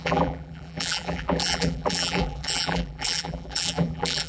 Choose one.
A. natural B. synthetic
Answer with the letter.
B